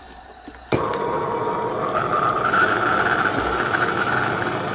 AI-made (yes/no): no